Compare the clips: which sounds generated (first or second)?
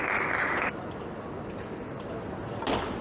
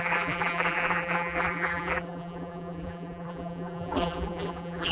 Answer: second